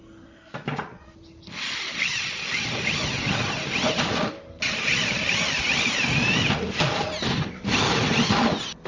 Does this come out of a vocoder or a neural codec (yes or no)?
no